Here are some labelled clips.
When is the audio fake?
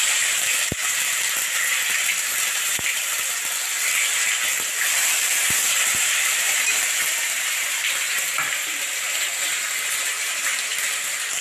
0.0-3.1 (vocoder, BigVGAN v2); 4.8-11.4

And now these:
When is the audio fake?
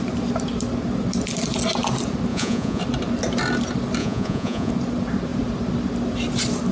2.3-2.8 (vocoder, Vocos); 4.0-4.7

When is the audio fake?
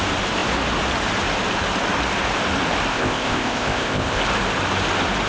2.9-4.2 (codec, ZipCodec)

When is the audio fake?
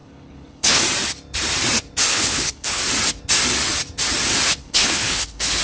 0.0-0.8 (codec, HILCodec); 2.1-2.8; 4.6-5.6